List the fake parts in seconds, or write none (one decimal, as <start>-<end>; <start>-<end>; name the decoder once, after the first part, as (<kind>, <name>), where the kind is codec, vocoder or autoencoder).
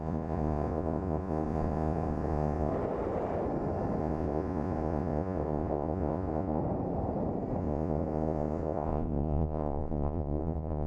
0.0-2.7 (vocoder, Vocos); 4.0-6.6; 7.6-10.9